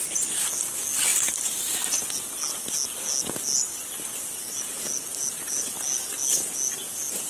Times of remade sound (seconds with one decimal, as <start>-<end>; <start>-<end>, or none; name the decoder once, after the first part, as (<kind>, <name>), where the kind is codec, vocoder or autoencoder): none